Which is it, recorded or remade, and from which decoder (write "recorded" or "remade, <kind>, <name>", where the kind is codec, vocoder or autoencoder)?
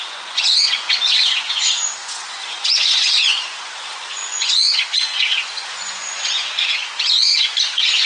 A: remade, vocoder, Vocos